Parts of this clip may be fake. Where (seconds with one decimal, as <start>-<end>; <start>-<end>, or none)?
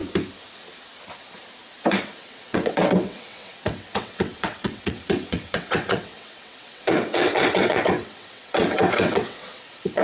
1.8-10.0